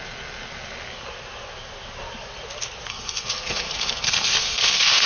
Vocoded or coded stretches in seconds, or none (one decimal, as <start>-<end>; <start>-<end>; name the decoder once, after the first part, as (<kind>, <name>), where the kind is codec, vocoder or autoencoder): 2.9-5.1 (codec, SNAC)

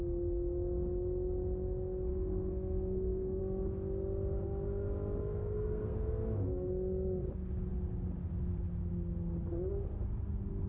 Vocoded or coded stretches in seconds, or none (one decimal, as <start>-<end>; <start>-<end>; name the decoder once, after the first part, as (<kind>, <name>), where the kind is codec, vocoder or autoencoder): 2.1-3.4 (codec, SNAC); 5.3-6.7

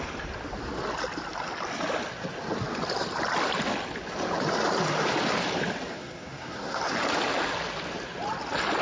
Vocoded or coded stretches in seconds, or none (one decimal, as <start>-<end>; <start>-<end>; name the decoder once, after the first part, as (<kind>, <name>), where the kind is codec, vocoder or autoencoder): 5.9-6.8 (codec, SNAC)